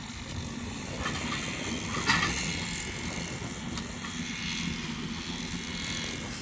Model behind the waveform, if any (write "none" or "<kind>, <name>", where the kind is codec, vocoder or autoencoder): none